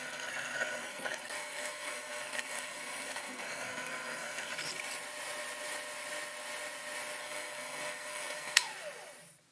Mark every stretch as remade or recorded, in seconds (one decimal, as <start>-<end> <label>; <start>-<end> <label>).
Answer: 0.0-4.5 remade; 4.5-7.2 recorded; 7.2-8.7 remade; 8.7-9.5 recorded